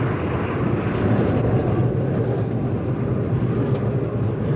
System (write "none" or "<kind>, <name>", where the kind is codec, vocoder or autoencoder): none